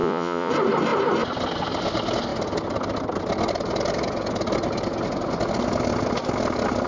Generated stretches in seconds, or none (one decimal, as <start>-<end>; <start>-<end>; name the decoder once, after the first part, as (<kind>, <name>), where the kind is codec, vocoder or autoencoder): 0.0-0.5 (vocoder, Vocos)

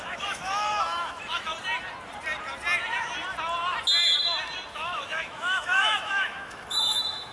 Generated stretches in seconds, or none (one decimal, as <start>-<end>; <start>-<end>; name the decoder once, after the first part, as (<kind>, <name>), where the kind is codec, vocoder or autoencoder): 0.0-1.5 (autoencoder, DAC-VAE); 4.7-7.3

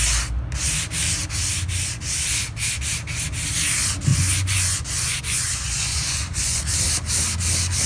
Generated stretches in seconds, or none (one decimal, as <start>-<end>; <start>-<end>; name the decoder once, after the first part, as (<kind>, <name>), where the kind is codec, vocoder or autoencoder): 4.1-6.6 (vocoder, Vocos)

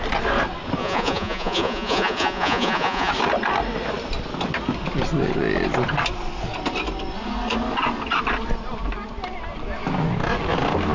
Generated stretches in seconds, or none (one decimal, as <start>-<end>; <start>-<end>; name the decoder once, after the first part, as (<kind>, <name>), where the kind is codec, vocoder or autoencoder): 0.8-3.1 (vocoder, Vocos)

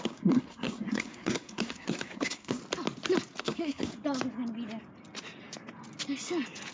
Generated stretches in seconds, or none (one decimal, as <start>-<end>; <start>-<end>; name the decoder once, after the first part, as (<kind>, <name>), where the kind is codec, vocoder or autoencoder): 0.0-2.6 (codec, SNAC); 3.4-3.9

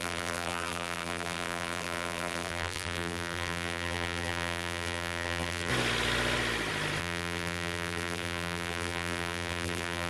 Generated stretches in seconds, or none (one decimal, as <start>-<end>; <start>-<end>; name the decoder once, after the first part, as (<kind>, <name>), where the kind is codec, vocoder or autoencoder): 0.0-5.7 (vocoder, BigVGAN v2); 7.0-10.1

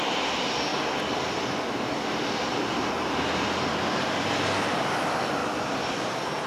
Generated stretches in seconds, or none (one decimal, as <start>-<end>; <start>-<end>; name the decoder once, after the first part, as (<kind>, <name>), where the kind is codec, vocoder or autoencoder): 0.0-0.7 (vocoder, BigVGAN v2); 2.1-5.4

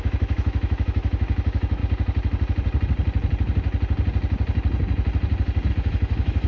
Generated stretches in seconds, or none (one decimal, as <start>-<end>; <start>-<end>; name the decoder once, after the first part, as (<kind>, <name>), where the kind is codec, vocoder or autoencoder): 0.0-1.8 (autoencoder, DAC-VAE); 5.7-6.5